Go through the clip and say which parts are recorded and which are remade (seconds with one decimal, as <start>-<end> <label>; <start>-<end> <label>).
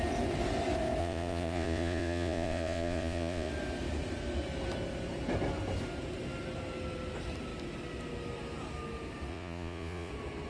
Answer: 0.0-1.0 recorded; 1.0-3.5 remade; 3.5-9.3 recorded; 9.3-10.1 remade; 10.1-10.5 recorded